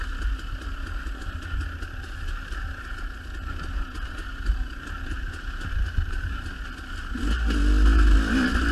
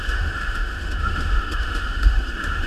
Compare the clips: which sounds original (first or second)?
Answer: first